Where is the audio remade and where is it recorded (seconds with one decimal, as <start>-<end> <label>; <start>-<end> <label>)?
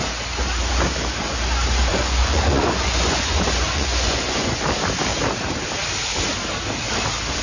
0.0-1.9 recorded; 1.9-4.6 remade; 4.6-7.4 recorded